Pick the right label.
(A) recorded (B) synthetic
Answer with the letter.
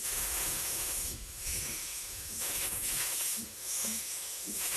B